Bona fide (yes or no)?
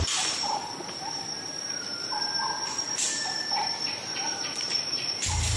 no